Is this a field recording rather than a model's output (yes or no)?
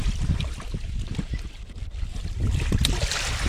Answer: no